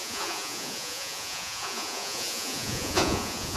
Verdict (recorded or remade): remade